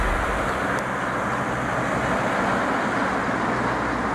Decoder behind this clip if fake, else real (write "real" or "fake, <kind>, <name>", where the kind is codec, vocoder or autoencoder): real